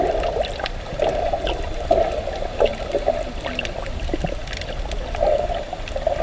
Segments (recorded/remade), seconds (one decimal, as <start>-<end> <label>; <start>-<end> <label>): 0.0-6.2 recorded